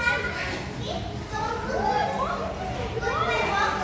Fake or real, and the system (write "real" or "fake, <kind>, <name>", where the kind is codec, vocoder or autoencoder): real